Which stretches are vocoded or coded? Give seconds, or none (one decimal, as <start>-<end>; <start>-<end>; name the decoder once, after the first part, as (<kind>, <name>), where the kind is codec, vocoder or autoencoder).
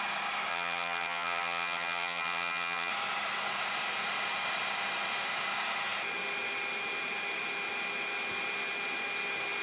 0.5-2.9 (vocoder, HiFi-GAN)